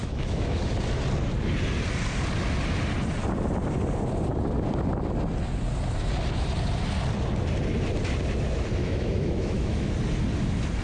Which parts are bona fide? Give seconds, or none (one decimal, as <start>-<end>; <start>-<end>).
0.7-8.8; 9.9-10.8